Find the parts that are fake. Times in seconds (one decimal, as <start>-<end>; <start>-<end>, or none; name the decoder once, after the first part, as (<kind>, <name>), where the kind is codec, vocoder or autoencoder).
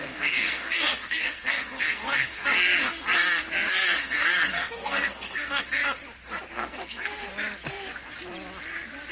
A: 0.0-2.4 (codec, SNAC); 3.7-5.8; 6.5-7.1